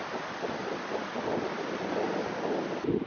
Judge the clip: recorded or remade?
recorded